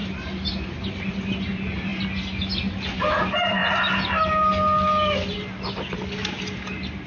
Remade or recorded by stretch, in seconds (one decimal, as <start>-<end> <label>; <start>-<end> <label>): 0.0-7.1 recorded